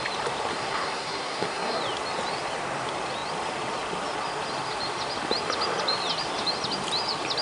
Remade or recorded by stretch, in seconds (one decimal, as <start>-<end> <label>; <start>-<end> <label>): 0.0-0.5 recorded; 0.5-1.8 remade; 1.8-7.4 recorded